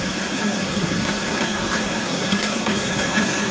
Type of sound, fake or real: fake